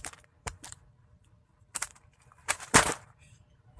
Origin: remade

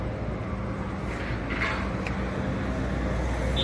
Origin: recorded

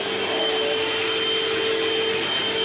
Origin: recorded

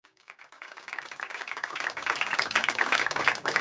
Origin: remade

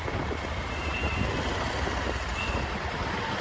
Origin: recorded